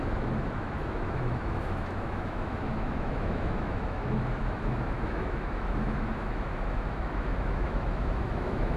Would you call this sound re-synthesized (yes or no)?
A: yes